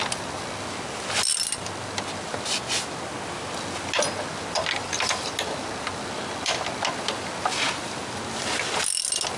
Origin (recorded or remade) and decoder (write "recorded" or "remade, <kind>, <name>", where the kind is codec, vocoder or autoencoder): recorded